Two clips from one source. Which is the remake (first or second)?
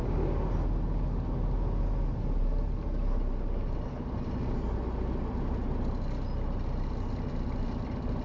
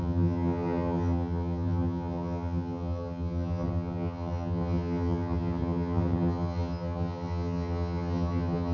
second